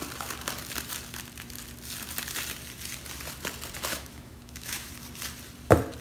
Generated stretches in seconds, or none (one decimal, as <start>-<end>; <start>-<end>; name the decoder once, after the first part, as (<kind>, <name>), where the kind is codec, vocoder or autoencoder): 3.9-4.9 (autoencoder, DAC-VAE)